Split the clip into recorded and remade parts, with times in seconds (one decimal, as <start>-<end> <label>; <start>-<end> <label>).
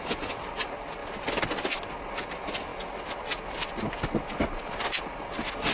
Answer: 0.0-5.7 recorded